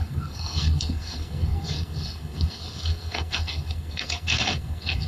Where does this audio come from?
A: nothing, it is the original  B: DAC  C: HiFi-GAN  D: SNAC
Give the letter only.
D